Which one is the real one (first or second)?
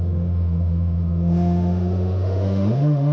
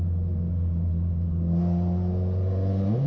second